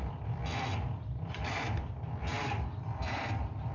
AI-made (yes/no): no